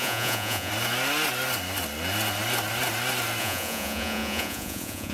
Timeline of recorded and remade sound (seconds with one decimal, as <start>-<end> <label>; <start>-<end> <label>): 0.0-0.7 remade; 0.7-3.4 recorded; 3.4-5.1 remade